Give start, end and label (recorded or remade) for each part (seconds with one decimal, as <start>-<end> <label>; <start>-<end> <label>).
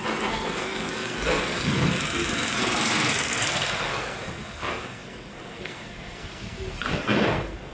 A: 0.0-7.7 remade